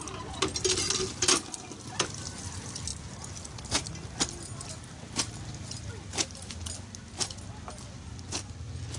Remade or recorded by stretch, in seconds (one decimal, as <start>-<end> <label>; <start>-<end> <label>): 0.0-9.0 recorded